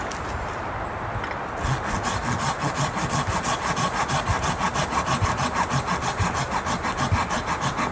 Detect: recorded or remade recorded